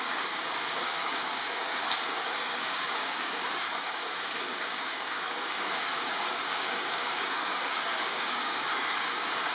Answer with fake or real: fake